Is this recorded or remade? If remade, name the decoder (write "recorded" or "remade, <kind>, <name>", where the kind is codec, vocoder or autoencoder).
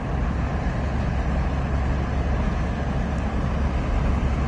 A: recorded